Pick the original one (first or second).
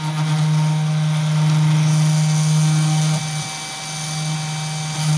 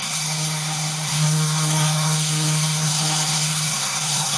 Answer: first